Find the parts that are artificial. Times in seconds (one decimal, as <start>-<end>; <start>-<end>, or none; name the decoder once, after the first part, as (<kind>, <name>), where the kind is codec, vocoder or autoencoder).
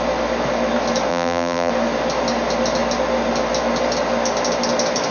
1.1-1.7 (vocoder, BigVGAN v2)